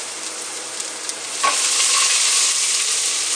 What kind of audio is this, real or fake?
real